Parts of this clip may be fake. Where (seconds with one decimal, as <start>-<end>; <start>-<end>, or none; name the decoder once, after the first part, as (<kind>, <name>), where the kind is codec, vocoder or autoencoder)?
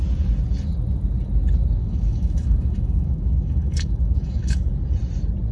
1.8-4.7 (autoencoder, DAC-VAE)